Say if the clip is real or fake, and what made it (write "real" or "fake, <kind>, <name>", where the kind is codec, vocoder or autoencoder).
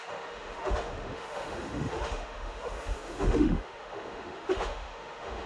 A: fake, autoencoder, DAC-VAE